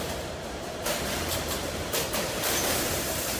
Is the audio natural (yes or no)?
no